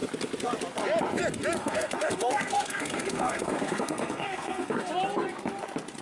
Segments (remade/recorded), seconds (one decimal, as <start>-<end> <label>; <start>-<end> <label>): 0.0-1.6 recorded; 1.6-4.9 remade; 4.9-6.0 recorded

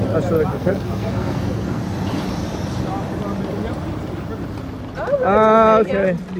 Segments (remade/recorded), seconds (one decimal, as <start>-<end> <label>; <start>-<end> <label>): 0.0-0.5 recorded; 0.5-1.8 remade; 1.8-6.4 recorded

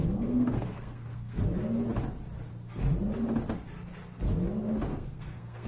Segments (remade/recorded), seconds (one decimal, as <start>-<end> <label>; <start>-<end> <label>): 0.0-1.4 remade; 1.4-4.9 recorded; 4.9-5.7 remade

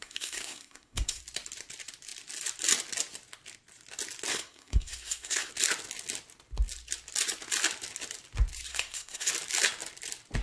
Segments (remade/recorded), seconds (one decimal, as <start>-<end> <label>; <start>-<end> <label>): 0.0-1.2 remade; 1.2-4.3 recorded; 4.3-5.5 remade; 5.5-8.7 recorded; 8.7-9.3 remade; 9.3-10.4 recorded

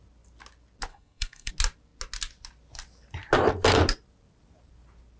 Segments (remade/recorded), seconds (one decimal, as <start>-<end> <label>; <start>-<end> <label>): 0.0-0.9 recorded; 0.9-1.5 remade; 1.5-5.2 recorded

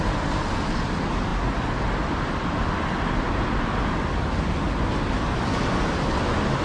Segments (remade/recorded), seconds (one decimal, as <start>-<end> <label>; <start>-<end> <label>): 0.0-6.6 recorded

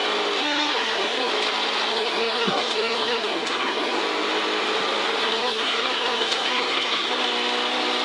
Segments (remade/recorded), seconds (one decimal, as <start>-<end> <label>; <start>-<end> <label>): 0.0-0.4 recorded; 0.4-1.3 remade; 1.3-1.9 recorded; 1.9-4.0 remade; 4.0-5.2 recorded; 5.2-7.1 remade; 7.1-8.0 recorded

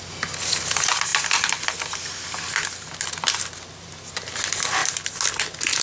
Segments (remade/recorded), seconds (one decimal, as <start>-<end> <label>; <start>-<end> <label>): 0.0-5.8 recorded